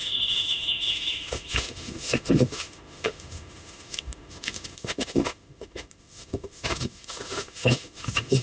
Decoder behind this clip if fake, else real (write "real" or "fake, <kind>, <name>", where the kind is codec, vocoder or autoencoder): fake, autoencoder, DAC-VAE